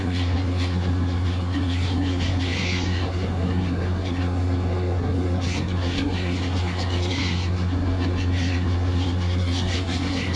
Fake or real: fake